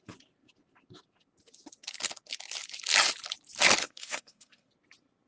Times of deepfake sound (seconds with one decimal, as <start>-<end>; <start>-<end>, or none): 3.8-4.7